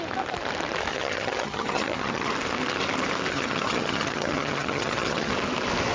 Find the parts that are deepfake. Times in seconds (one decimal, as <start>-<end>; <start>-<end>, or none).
0.9-2.3; 3.3-5.3